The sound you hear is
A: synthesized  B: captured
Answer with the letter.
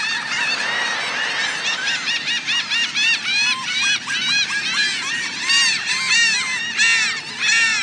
A